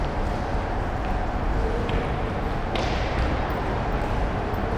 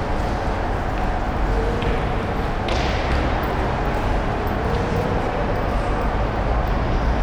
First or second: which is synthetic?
first